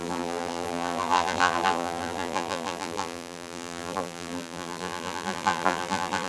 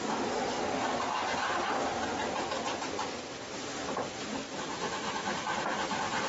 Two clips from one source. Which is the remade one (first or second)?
first